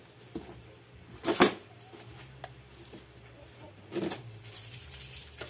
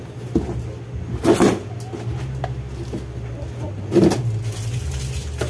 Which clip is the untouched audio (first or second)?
second